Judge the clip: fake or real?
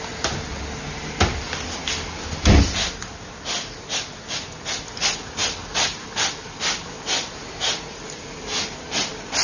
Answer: real